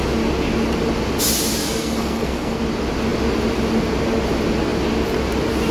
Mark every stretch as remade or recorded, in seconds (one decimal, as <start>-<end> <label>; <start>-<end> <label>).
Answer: 0.0-1.6 recorded; 1.6-2.6 remade; 2.6-5.7 recorded